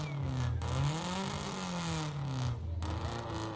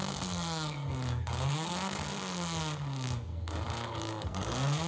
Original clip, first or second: first